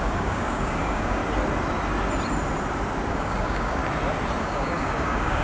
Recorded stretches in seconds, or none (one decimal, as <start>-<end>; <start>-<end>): 1.2-3.1; 3.8-4.4